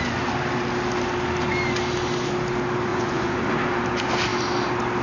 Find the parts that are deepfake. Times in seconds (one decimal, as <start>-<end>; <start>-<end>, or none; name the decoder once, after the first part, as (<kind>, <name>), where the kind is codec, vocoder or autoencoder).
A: 2.9-3.4 (vocoder, Vocos)